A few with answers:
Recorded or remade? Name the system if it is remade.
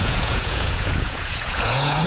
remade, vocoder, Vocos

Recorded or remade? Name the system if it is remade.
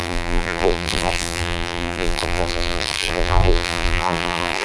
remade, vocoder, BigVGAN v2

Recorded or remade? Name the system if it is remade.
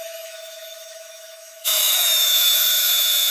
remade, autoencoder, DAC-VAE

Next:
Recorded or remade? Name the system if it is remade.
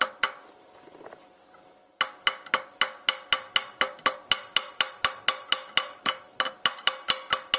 recorded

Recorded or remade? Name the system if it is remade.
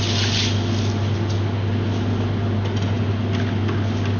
recorded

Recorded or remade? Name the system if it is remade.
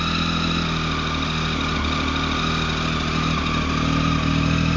recorded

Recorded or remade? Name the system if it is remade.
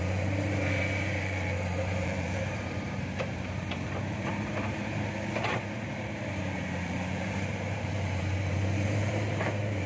remade, vocoder, BigVGAN v2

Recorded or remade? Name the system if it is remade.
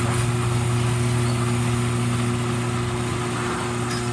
recorded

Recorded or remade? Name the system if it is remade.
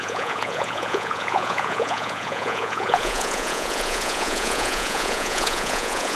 remade, vocoder, Vocos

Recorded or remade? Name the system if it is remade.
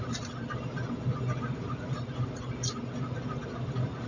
recorded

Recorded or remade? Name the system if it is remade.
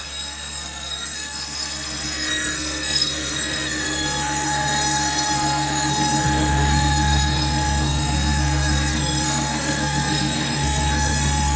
remade, codec, SNAC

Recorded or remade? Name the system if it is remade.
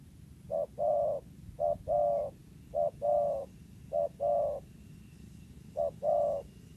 recorded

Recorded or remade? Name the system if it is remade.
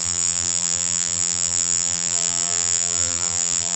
remade, vocoder, BigVGAN v2